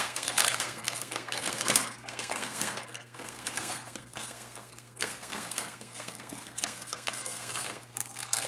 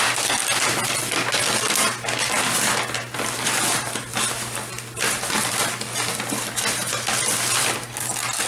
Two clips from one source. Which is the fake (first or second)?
first